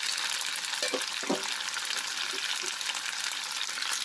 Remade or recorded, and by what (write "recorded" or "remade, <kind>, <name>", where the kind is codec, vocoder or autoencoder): recorded